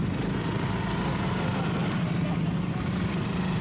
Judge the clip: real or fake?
real